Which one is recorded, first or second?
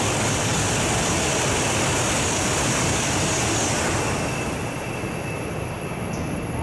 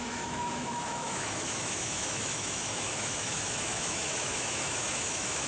first